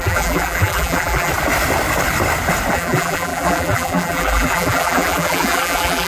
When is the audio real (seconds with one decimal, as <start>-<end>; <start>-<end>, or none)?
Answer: 1.3-2.7